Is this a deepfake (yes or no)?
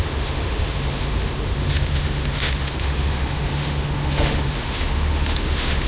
yes